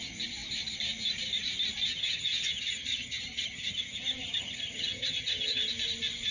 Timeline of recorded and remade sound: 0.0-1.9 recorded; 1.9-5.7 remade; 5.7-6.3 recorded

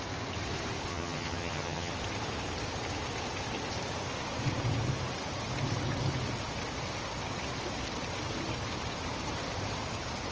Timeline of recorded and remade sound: 0.0-0.9 recorded; 0.9-1.9 remade; 1.9-10.3 recorded

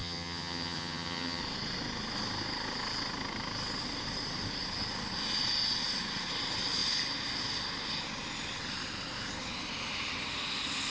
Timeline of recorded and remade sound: 0.0-1.4 remade; 1.4-10.9 recorded

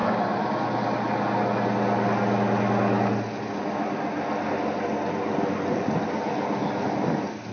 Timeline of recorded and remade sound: 0.0-7.5 recorded

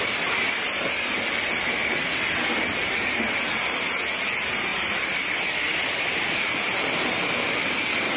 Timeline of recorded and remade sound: 0.0-8.2 recorded

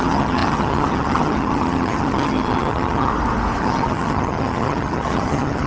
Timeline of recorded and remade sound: 0.0-3.1 remade; 3.1-3.6 recorded; 3.6-5.7 remade

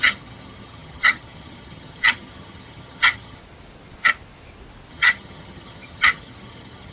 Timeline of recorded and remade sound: 0.0-3.4 remade; 3.4-4.9 recorded; 4.9-6.9 remade

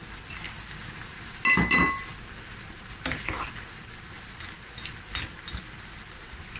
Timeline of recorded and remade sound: 0.0-6.6 recorded